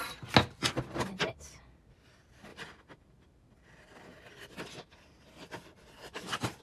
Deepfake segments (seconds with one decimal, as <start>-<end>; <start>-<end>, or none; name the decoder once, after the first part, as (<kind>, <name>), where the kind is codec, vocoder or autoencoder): 2.5-6.6 (vocoder, BigVGAN v2)